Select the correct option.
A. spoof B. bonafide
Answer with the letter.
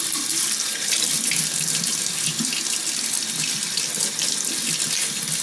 B